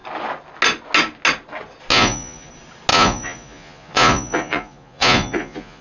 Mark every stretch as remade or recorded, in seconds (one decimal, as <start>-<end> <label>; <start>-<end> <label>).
0.0-1.9 recorded; 1.9-2.5 remade; 2.5-2.9 recorded; 2.9-5.8 remade